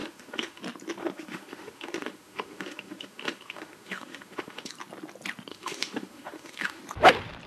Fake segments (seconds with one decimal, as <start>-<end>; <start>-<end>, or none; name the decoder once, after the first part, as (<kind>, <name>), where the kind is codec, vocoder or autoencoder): 0.0-0.6 (autoencoder, DAC-VAE); 1.0-4.7; 5.5-6.8